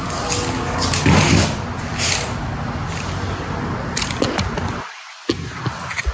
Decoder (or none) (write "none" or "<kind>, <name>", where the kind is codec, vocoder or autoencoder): none